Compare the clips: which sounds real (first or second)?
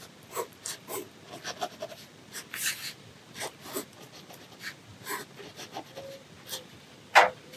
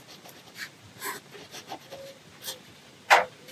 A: first